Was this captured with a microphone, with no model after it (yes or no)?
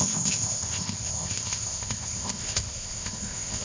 no